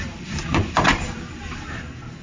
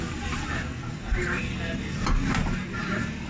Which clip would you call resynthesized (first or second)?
first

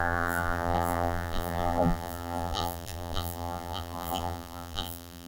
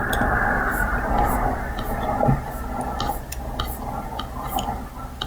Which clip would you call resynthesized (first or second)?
first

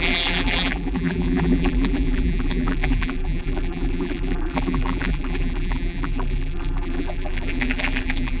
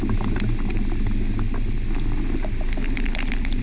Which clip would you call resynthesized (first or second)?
first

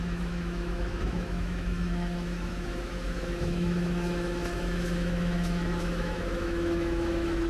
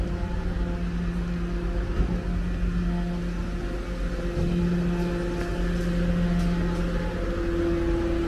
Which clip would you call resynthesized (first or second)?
first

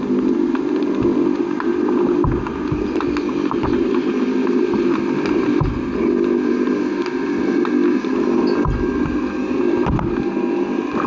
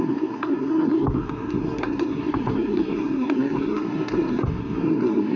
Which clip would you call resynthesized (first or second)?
second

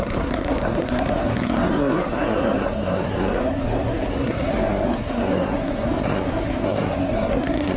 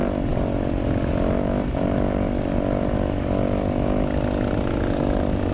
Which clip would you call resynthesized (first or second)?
first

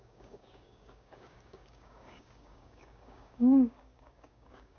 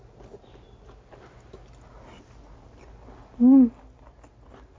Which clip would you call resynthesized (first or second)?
first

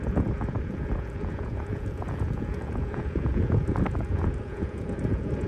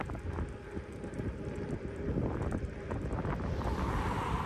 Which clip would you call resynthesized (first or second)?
first